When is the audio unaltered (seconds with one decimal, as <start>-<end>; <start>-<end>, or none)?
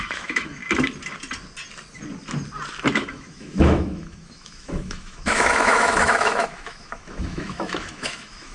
0.6-2.9